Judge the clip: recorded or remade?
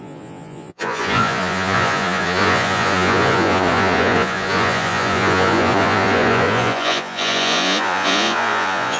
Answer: remade